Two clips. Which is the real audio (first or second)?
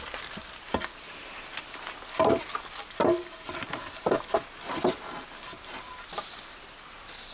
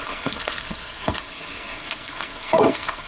first